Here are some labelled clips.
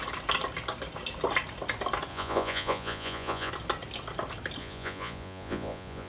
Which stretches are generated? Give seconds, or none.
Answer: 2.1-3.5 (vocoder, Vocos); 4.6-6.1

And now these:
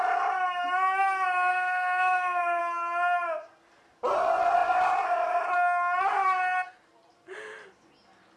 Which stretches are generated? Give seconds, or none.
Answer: 1.5-2.6 (codec, SNAC)

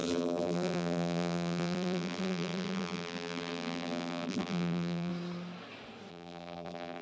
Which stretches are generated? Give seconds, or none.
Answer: 0.0-5.1 (vocoder, BigVGAN v2); 6.1-7.0